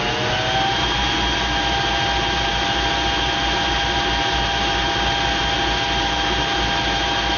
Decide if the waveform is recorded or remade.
recorded